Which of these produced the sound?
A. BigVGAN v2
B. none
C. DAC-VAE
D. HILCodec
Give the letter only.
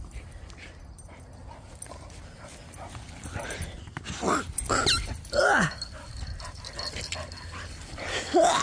B